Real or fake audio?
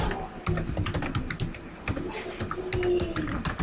real